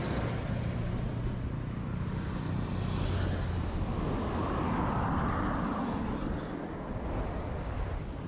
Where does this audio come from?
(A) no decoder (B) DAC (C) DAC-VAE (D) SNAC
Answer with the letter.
A